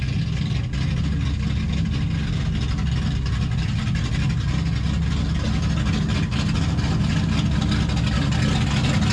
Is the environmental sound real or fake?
real